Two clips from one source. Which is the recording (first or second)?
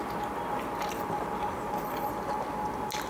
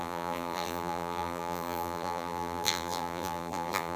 first